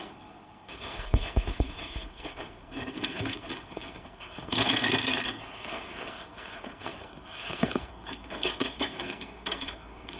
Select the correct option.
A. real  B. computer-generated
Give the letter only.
B